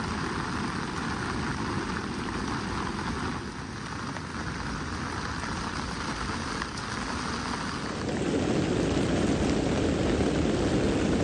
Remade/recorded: recorded